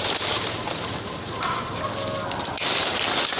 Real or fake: real